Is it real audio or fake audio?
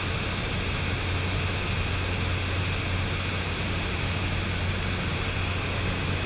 real